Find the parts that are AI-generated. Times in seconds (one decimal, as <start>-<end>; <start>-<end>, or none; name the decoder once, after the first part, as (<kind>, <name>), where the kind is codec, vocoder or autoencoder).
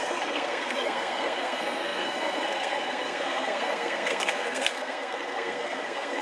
0.0-6.2 (codec, SNAC)